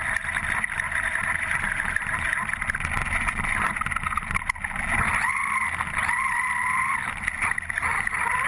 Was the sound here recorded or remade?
recorded